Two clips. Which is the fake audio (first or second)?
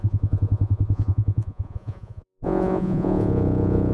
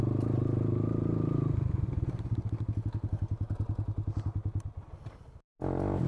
first